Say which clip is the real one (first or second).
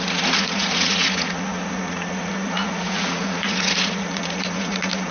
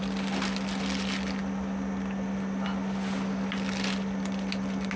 second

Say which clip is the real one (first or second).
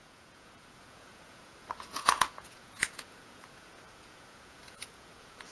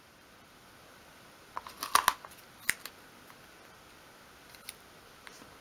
second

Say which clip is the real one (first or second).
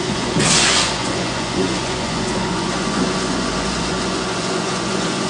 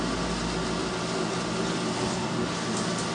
second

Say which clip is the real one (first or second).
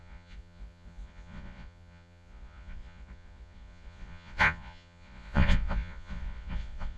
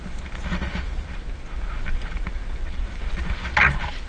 second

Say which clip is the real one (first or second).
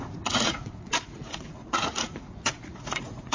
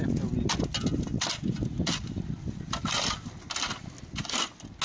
second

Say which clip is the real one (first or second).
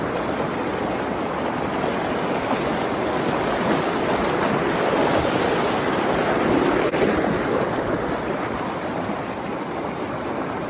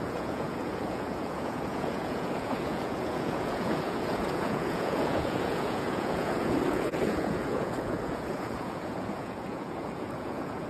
first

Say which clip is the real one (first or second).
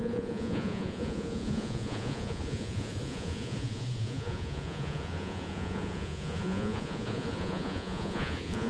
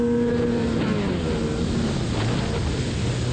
second